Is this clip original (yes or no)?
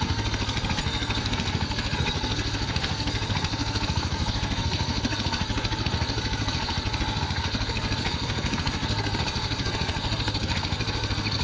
no